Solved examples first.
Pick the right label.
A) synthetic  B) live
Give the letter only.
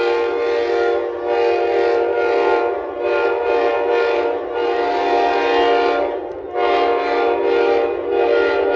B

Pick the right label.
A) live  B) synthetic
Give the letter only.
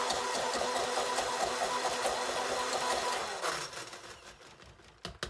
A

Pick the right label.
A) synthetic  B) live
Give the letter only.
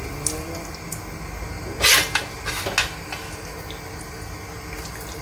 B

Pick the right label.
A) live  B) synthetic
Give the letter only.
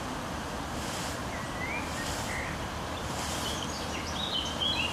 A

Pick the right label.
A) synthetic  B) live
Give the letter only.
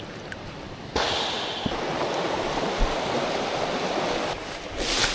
B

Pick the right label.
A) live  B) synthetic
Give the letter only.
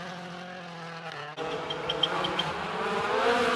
A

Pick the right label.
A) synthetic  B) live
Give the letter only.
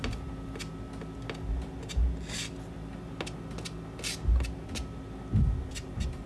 B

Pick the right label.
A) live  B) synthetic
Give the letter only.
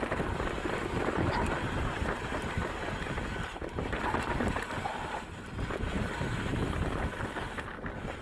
A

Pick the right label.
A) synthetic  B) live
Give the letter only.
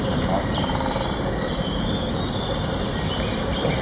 A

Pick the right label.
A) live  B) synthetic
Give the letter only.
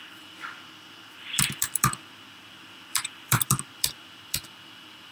B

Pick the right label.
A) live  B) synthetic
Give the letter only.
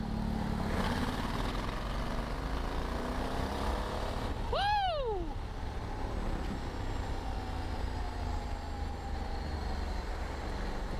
A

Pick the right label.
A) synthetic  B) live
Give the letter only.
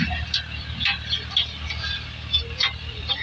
B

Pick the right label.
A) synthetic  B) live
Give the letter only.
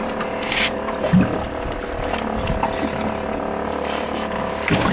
B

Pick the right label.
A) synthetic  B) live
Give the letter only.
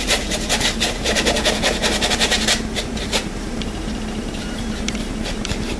A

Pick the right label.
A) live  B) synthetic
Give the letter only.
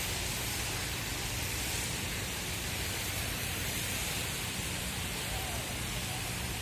B